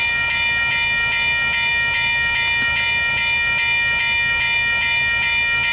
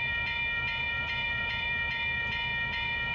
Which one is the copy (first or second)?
second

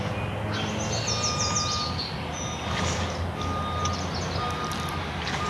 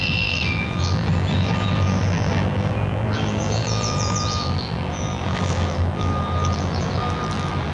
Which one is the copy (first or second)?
second